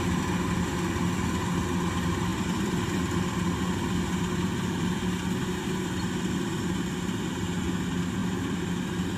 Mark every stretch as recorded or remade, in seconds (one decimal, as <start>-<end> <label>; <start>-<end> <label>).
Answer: 0.0-2.3 recorded; 2.3-7.3 remade; 7.3-8.2 recorded; 8.2-8.7 remade; 8.7-9.2 recorded